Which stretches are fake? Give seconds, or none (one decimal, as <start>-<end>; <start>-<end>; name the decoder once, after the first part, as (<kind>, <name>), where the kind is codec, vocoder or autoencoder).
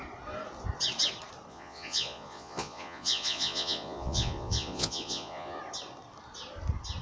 1.5-5.6 (vocoder, Vocos)